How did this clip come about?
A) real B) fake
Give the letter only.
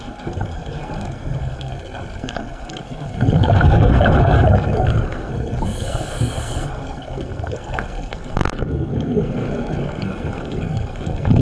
B